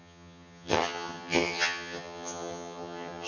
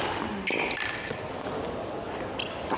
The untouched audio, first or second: second